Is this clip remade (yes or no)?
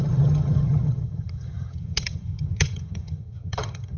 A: yes